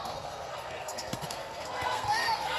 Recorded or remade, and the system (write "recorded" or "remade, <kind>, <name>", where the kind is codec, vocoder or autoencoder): remade, codec, SNAC